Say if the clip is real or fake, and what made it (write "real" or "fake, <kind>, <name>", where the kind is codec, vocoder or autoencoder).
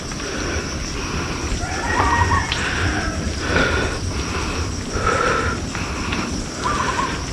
real